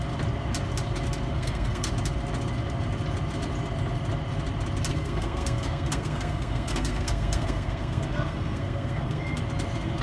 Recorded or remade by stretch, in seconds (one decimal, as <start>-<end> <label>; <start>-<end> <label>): 0.0-1.3 recorded; 1.3-1.9 remade; 1.9-4.9 recorded; 4.9-9.4 remade; 9.4-10.0 recorded